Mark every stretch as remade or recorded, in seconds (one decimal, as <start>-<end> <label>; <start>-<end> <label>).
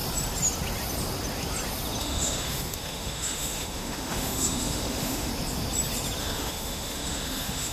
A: 0.0-2.0 recorded; 2.0-5.3 remade; 5.3-6.2 recorded; 6.2-7.7 remade